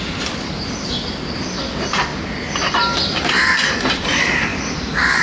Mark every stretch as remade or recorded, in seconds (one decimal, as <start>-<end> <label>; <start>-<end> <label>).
0.0-5.2 recorded